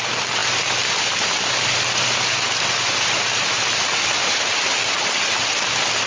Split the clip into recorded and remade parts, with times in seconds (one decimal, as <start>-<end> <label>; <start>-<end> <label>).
0.0-6.1 recorded

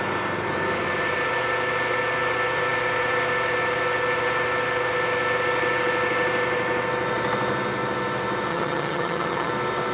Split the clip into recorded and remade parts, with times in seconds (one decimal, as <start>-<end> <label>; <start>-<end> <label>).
0.0-8.5 recorded; 8.5-9.5 remade; 9.5-9.9 recorded

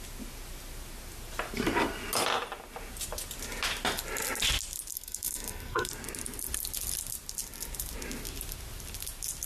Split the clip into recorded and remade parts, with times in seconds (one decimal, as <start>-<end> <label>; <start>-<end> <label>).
0.0-4.9 recorded; 4.9-5.9 remade; 5.9-9.5 recorded

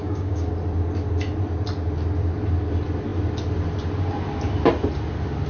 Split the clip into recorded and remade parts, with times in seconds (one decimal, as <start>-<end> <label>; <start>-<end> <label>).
0.0-0.5 remade; 0.5-5.5 recorded

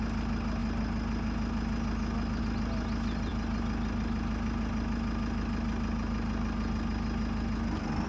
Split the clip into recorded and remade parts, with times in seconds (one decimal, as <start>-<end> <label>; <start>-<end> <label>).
0.0-8.1 recorded

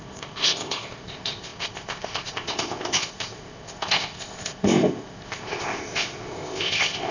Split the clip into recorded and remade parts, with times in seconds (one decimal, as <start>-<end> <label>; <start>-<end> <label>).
0.0-7.1 remade

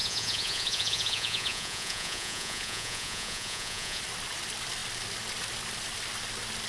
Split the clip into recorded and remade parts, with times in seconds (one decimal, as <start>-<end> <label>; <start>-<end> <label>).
0.0-4.0 remade; 4.0-6.7 recorded